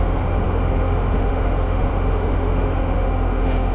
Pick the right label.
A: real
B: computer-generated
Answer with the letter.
B